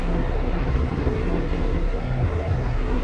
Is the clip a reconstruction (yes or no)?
yes